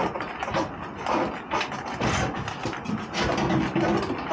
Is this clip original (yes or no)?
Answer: yes